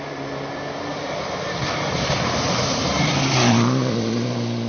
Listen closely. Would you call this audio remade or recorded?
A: recorded